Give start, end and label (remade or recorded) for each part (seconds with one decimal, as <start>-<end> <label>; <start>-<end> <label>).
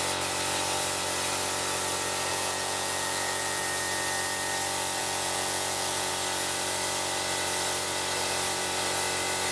0.0-2.3 recorded; 2.3-3.6 remade; 3.6-5.0 recorded; 5.0-6.1 remade; 6.1-9.5 recorded